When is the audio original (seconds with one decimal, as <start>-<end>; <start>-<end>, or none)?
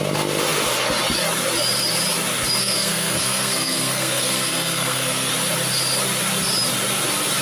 0.0-2.6; 5.3-7.4